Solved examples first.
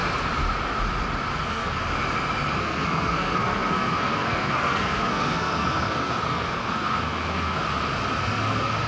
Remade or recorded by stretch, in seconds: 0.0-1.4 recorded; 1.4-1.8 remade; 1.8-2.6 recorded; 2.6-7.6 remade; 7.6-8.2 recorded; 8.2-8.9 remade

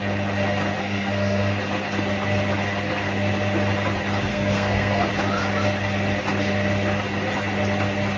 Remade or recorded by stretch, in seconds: 0.0-0.8 recorded; 0.8-1.6 remade; 1.6-4.3 recorded; 4.3-5.1 remade; 5.1-8.2 recorded

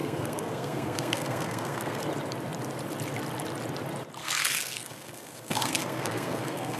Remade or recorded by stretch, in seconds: 0.0-2.0 remade; 2.0-4.2 recorded; 4.2-6.8 remade

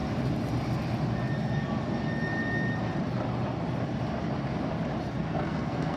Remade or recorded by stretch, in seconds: 0.0-5.2 recorded; 5.2-6.0 remade